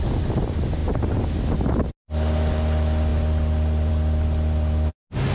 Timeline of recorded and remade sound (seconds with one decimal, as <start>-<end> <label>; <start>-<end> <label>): 0.0-5.3 recorded

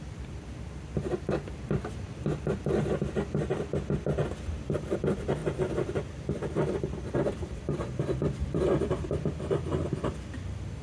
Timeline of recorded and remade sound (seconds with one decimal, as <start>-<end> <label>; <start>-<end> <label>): 0.0-5.4 recorded; 5.4-9.4 remade; 9.4-10.8 recorded

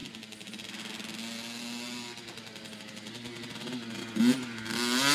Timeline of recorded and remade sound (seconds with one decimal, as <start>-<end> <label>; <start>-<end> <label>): 0.0-5.1 recorded